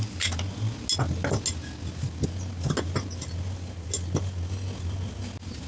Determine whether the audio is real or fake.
real